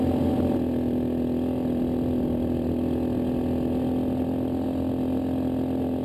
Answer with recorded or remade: recorded